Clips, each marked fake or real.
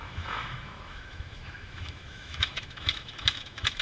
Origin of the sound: fake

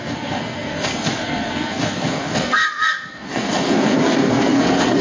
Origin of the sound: fake